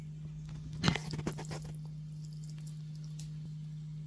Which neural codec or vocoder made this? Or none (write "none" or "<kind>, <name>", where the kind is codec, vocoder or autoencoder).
none